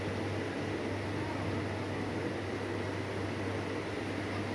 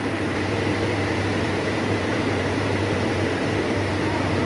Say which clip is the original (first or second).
first